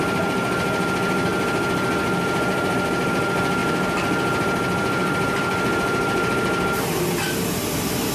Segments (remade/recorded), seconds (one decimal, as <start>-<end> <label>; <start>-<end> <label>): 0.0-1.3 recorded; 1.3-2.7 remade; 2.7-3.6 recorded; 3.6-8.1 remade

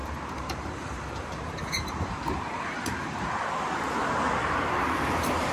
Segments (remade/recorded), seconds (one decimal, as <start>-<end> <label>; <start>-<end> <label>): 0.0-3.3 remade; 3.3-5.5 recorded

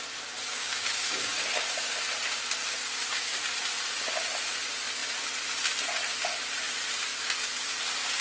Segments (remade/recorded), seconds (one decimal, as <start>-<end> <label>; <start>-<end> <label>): 0.0-0.5 recorded; 0.5-1.3 remade; 1.3-8.2 recorded

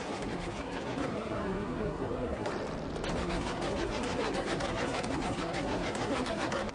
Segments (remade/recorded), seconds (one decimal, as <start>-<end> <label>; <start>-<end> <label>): 0.0-2.5 remade; 2.5-3.2 recorded; 3.2-6.7 remade

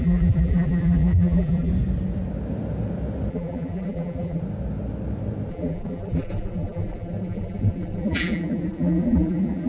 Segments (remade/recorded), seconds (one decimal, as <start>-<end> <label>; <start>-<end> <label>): 0.0-1.7 remade; 1.7-3.3 recorded; 3.3-4.4 remade; 4.4-5.5 recorded; 5.5-9.7 remade

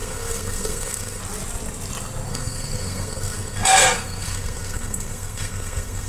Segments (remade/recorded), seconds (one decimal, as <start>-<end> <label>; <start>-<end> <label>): 0.0-1.2 remade; 1.2-2.3 recorded; 2.3-6.1 remade